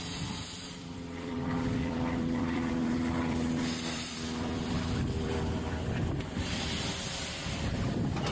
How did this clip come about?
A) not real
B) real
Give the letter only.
A